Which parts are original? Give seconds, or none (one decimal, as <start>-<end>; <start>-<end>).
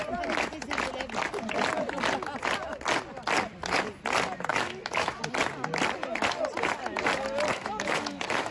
0.0-4.5; 5.2-7.5